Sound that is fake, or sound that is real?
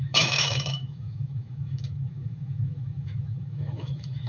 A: fake